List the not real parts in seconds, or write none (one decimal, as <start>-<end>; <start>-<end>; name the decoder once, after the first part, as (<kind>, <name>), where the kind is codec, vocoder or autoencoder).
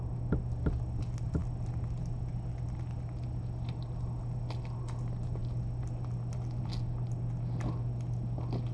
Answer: none